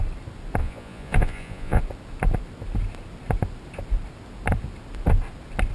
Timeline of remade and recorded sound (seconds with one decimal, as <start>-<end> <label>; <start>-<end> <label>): 0.0-0.6 recorded; 0.6-1.8 remade; 1.8-5.7 recorded